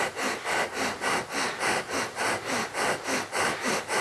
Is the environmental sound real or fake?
real